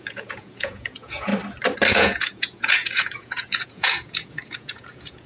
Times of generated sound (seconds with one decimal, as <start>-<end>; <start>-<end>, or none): 0.0-1.3; 1.9-5.3